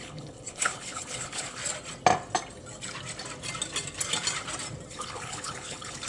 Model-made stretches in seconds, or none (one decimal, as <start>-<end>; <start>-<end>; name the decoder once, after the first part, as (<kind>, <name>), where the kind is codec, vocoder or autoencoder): 0.0-1.6 (codec, HILCodec); 4.9-6.1